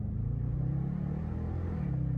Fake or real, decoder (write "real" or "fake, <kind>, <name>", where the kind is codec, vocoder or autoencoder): fake, vocoder, BigVGAN v2